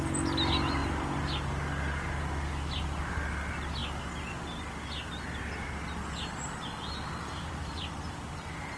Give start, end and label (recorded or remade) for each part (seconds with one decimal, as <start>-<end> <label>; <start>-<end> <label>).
0.0-8.8 recorded